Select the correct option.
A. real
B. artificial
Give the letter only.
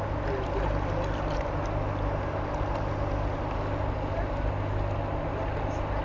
A